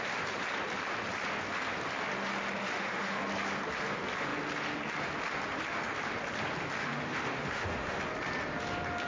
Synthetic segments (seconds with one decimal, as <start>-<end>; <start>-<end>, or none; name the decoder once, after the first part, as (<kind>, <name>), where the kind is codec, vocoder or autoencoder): 2.6-3.2 (autoencoder, DAC-VAE); 6.8-8.0